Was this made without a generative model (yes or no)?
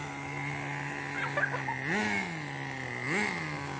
yes